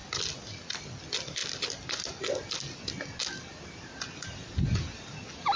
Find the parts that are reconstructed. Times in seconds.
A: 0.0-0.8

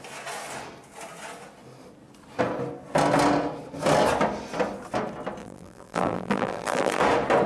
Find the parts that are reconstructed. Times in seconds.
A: 5.4-7.0

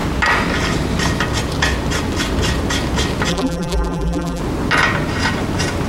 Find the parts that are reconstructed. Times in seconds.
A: 3.3-4.4

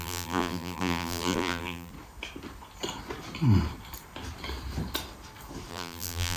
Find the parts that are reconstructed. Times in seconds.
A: 0.0-1.9; 5.7-6.4

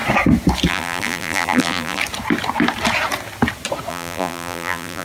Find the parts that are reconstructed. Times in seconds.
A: 0.7-2.0; 3.9-5.0

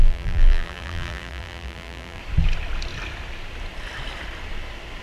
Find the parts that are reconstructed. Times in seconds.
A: 0.0-2.2